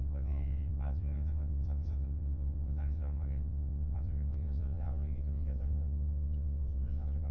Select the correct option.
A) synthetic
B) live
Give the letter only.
A